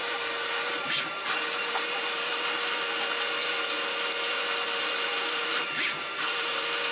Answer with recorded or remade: remade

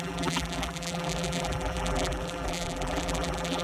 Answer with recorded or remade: remade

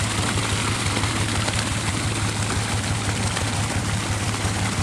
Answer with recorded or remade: remade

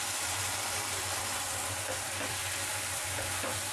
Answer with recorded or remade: remade